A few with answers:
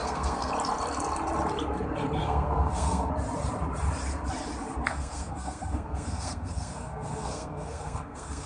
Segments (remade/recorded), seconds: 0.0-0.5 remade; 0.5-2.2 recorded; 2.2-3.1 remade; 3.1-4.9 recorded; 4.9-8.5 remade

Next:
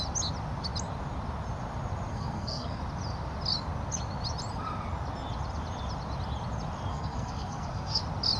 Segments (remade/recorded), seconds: 0.0-2.1 recorded; 2.1-2.8 remade; 2.8-6.9 recorded; 6.9-8.0 remade; 8.0-8.4 recorded

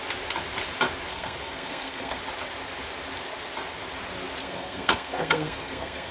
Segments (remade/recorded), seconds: 0.0-1.1 recorded; 1.1-2.2 remade; 2.2-4.4 recorded; 4.4-6.1 remade